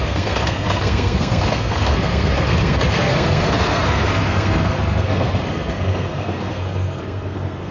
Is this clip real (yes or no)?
no